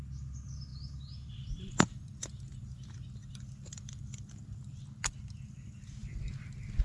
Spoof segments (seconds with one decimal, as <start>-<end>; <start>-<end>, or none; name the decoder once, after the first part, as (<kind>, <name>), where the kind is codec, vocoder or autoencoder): none